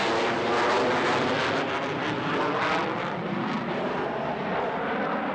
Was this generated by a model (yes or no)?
no